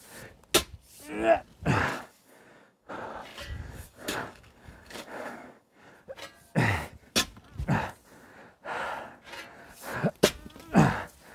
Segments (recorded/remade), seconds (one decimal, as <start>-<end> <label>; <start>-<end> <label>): 0.0-1.9 recorded; 1.9-2.9 remade; 2.9-3.3 recorded; 3.3-5.9 remade; 5.9-11.3 recorded

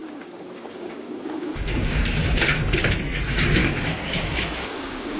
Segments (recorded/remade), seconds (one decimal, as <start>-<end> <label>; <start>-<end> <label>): 0.0-2.0 remade; 2.0-3.6 recorded; 3.6-5.2 remade